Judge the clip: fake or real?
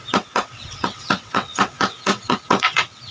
fake